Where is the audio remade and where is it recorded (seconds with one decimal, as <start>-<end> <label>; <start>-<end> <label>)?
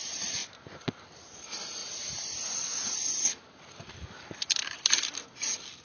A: 0.0-5.8 recorded